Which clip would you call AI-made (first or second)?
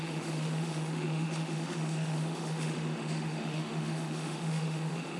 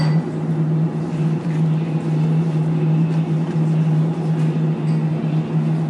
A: first